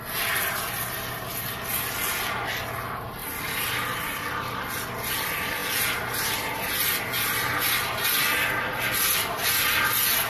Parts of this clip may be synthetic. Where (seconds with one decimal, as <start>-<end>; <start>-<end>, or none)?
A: none